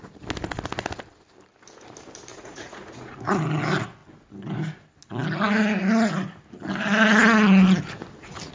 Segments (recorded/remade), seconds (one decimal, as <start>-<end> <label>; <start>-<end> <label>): 0.0-2.3 recorded; 2.3-3.4 remade; 3.4-8.5 recorded